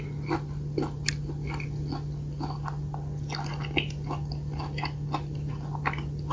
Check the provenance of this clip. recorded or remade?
recorded